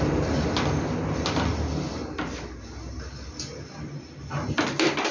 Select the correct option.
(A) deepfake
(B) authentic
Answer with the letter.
B